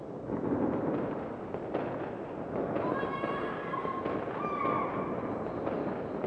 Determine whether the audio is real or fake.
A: real